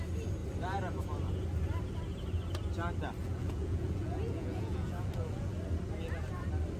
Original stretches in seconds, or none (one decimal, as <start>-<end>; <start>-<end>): 0.0-3.2; 5.5-6.8